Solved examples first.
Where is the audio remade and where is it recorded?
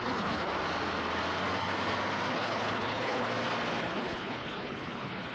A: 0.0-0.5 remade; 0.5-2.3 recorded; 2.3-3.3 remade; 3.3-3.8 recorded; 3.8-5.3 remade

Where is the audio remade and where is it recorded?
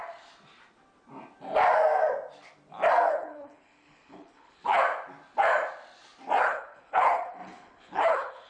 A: 0.0-3.1 recorded; 3.1-4.8 remade; 4.8-6.4 recorded; 6.4-8.5 remade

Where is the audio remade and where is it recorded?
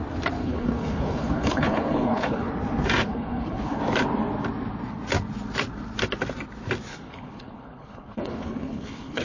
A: 0.0-0.4 recorded; 0.4-2.5 remade; 2.5-3.0 recorded; 3.0-3.8 remade; 3.8-6.9 recorded; 6.9-9.2 remade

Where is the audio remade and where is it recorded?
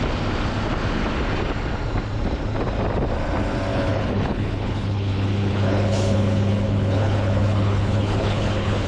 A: 0.0-3.7 recorded; 3.7-8.9 remade